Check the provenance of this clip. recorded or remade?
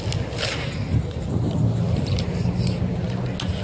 recorded